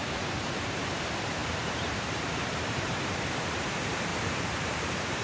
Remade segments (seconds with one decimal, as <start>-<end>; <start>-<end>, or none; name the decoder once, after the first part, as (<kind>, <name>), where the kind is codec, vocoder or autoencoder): 0.0-5.2 (vocoder, BigVGAN v2)

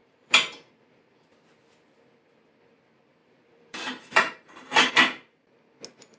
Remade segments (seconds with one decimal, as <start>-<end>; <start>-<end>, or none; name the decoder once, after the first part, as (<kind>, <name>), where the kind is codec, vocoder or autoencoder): 0.0-0.7 (vocoder, BigVGAN v2); 3.2-4.9